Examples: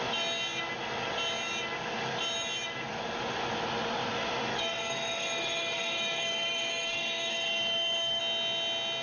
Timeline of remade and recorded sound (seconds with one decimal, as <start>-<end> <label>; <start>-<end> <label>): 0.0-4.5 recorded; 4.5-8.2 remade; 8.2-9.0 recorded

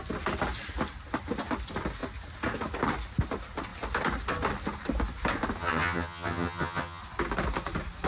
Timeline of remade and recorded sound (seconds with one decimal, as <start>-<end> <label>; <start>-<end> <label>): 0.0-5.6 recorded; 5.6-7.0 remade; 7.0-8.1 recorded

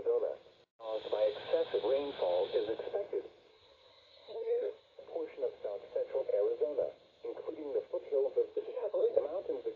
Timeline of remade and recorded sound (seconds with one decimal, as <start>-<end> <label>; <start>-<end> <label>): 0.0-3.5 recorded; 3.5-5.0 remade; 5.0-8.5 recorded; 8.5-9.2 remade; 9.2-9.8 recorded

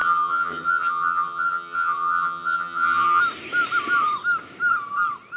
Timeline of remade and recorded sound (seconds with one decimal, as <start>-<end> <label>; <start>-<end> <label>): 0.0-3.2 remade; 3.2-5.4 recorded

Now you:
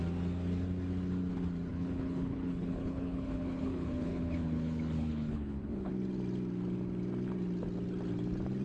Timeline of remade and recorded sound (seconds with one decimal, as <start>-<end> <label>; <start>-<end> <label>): 0.0-1.7 recorded; 1.7-5.9 remade; 5.9-8.6 recorded

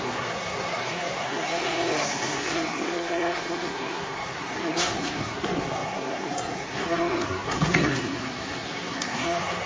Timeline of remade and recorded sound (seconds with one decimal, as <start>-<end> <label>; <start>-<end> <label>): 0.0-9.7 remade

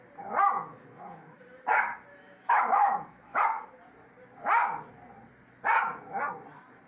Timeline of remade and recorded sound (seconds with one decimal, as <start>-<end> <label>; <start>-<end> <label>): 0.0-0.6 recorded; 0.6-1.4 remade; 1.4-2.1 recorded; 2.1-3.4 remade; 3.4-6.9 recorded

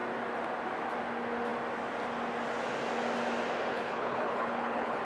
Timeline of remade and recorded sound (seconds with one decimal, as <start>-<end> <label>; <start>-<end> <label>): 0.0-3.7 recorded; 3.7-5.0 remade